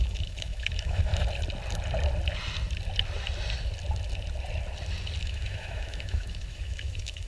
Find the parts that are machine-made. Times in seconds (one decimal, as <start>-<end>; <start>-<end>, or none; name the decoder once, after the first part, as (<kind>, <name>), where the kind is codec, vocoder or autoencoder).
0.0-1.1 (autoencoder, DAC-VAE); 5.2-7.3